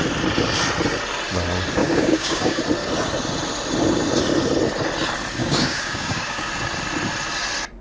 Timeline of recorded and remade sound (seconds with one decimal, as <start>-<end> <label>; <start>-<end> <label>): 0.0-1.8 recorded; 1.8-2.6 remade; 2.6-5.4 recorded; 5.4-6.5 remade; 6.5-7.8 recorded